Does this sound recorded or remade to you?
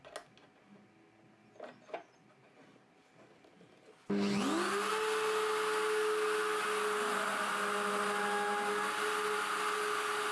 recorded